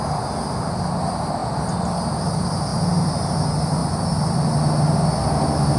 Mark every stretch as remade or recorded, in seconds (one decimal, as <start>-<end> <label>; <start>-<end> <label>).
0.0-5.8 recorded